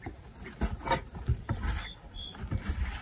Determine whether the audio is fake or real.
real